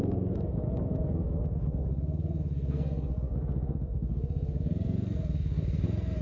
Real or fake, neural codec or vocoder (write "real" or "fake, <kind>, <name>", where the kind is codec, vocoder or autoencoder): fake, codec, SNAC